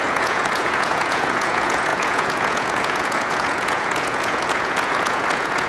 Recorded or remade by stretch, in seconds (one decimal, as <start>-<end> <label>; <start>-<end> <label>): 0.0-5.7 remade

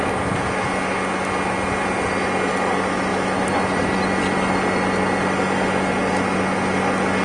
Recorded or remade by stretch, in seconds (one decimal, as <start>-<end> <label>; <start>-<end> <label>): 0.0-7.2 recorded

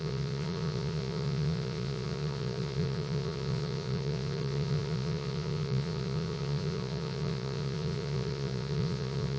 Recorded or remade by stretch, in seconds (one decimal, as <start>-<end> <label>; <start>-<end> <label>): 0.0-9.4 remade

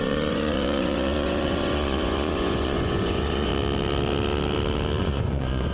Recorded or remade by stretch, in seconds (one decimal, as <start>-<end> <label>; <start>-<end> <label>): 0.0-3.5 remade; 3.5-5.0 recorded; 5.0-5.7 remade

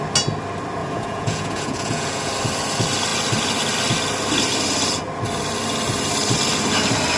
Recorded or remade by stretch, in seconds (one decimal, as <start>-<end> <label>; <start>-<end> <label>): 0.0-0.8 recorded; 0.8-2.3 remade; 2.3-7.2 recorded

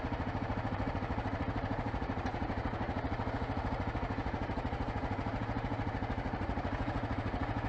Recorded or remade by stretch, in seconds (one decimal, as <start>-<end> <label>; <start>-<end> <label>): 0.0-7.7 remade

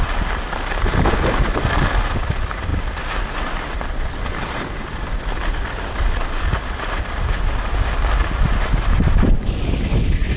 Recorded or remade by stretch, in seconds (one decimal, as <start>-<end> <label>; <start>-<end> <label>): 0.0-10.4 recorded